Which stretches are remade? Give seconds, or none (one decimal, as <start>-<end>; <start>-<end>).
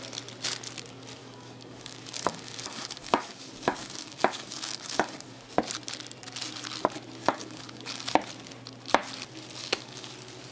1.2-5.5; 7.2-8.1; 9.6-10.1